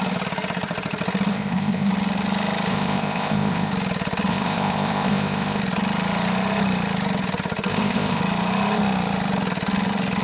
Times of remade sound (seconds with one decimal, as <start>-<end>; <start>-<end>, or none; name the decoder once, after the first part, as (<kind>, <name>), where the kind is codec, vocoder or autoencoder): 1.3-1.9 (codec, ZipCodec); 2.7-3.7; 4.3-5.6; 7.7-8.2